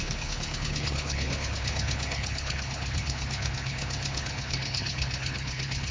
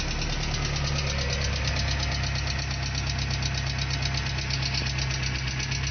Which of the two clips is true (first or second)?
second